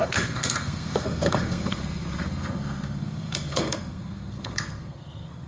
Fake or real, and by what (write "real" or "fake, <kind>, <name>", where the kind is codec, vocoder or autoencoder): fake, codec, SNAC